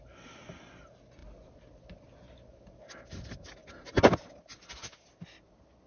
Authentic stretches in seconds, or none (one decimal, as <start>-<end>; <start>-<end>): 0.0-5.9